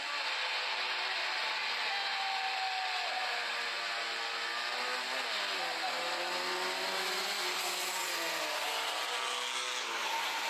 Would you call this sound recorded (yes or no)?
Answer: yes